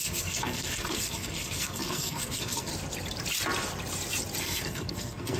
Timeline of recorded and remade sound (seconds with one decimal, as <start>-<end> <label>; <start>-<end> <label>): 0.0-2.7 remade; 2.7-4.4 recorded; 4.4-5.4 remade